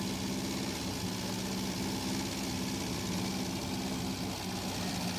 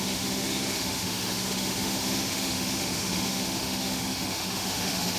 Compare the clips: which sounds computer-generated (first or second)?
second